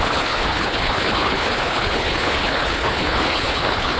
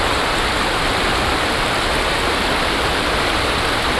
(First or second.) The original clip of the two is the second